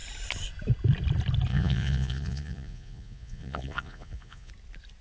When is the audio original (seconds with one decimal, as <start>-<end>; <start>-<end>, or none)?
0.0-1.5; 4.5-5.0